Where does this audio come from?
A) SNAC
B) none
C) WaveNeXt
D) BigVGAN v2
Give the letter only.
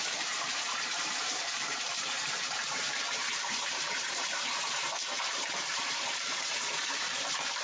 D